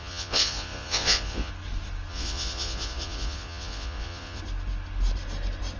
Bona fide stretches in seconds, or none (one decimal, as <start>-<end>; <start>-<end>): 1.5-2.1; 4.4-5.8